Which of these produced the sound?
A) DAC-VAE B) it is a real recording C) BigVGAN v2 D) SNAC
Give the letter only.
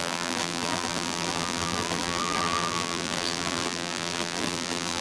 C